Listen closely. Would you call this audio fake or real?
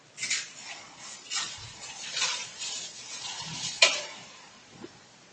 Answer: fake